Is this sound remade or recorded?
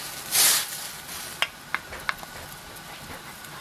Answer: recorded